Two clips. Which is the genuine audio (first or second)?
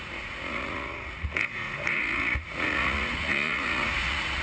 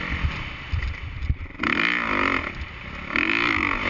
second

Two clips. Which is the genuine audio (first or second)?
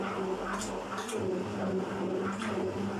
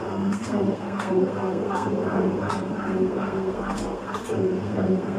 first